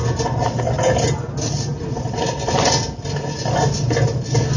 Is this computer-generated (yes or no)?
no